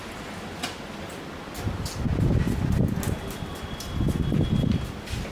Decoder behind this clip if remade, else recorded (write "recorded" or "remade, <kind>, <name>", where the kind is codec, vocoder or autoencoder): recorded